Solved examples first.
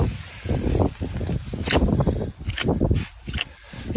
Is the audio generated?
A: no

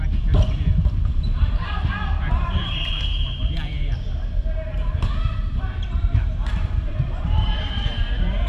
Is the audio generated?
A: yes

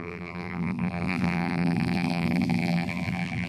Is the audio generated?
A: yes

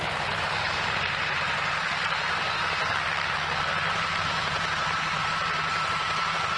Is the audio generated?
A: yes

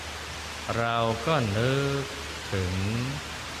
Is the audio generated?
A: no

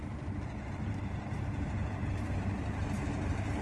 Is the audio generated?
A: yes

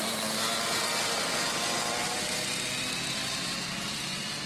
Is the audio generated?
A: no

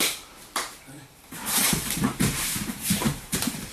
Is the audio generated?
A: yes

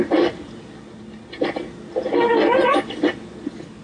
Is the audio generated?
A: no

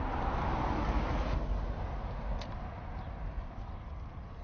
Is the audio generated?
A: no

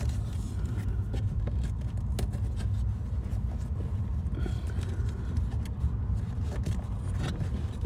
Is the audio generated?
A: no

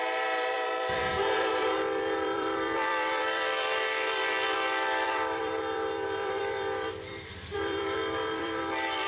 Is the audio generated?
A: yes